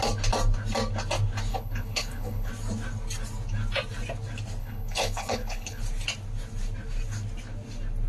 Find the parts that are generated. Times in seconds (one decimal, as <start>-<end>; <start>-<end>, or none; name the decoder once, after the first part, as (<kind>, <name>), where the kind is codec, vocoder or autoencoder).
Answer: 1.5-2.5 (codec, HILCodec); 4.6-5.8